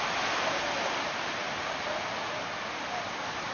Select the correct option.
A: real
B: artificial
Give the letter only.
A